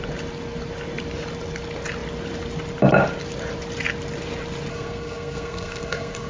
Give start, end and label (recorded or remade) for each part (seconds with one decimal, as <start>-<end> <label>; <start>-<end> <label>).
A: 0.0-4.7 recorded; 4.7-6.3 remade